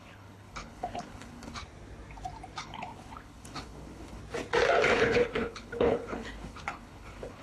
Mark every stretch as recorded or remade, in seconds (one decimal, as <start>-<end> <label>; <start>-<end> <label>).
0.0-1.6 remade; 1.6-2.6 recorded; 2.6-4.2 remade; 4.2-4.9 recorded; 4.9-7.4 remade